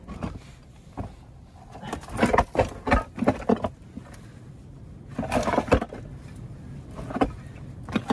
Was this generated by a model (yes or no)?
no